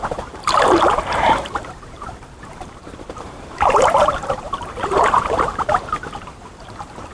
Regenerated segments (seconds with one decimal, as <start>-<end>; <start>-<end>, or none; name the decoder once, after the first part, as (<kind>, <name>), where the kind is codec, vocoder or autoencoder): 0.0-5.5 (vocoder, BigVGAN v2); 6.5-7.1